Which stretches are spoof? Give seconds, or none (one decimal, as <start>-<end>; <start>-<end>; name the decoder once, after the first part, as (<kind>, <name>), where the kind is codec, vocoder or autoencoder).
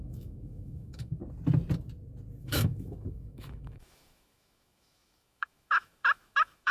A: 0.0-1.2 (autoencoder, DAC-VAE); 2.4-6.7